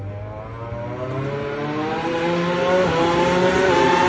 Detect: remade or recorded recorded